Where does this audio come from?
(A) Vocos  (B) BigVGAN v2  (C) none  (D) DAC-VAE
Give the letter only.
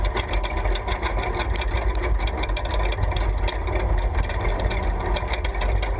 C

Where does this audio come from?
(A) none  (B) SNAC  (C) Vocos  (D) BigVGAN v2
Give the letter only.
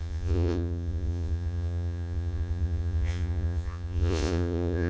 C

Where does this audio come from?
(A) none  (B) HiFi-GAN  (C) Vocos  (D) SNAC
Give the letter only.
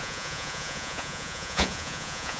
C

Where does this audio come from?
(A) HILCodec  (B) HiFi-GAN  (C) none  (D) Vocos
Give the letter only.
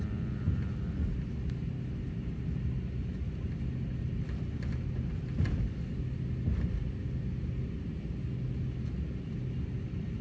C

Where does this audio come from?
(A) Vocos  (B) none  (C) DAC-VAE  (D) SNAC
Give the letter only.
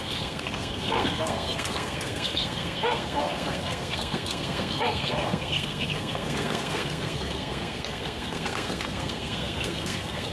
D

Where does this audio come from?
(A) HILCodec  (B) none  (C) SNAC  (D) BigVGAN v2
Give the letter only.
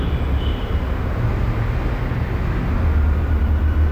B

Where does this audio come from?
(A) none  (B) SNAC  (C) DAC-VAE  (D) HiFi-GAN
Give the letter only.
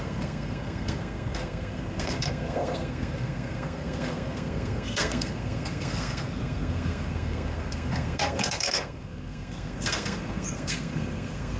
B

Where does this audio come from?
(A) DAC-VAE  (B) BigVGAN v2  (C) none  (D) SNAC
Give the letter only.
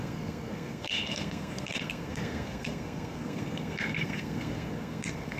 D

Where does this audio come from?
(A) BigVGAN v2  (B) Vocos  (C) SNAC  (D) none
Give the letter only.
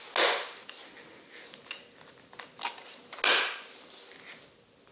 D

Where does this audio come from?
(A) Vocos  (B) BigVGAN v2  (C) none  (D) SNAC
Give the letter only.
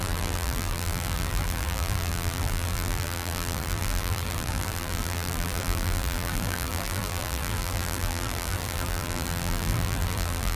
B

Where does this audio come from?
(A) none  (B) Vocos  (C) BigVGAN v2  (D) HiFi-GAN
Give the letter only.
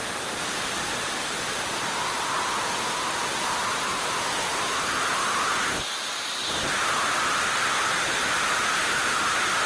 C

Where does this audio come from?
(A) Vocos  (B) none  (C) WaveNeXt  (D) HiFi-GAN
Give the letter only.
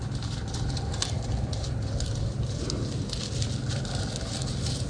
B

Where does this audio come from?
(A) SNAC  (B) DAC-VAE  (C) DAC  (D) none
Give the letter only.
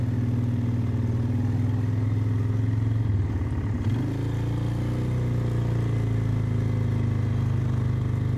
D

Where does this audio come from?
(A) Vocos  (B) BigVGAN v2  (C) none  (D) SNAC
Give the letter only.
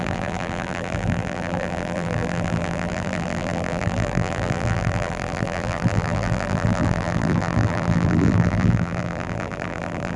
B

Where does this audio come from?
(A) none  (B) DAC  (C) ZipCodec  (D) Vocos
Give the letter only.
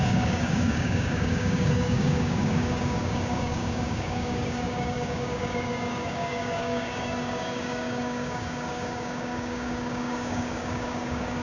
B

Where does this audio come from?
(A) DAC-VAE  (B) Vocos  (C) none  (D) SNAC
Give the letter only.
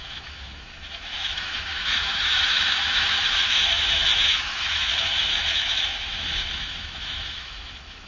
A